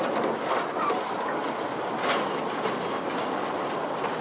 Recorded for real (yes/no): yes